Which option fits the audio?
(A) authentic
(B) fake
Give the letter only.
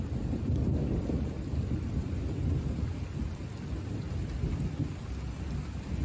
A